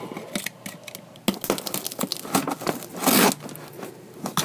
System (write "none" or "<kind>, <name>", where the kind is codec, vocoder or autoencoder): none